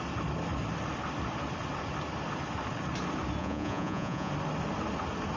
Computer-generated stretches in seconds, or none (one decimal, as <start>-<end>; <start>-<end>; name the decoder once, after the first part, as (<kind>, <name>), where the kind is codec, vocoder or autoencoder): 3.4-4.3 (vocoder, Vocos)